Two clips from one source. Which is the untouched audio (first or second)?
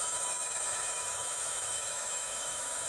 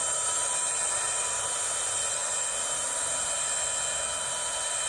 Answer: second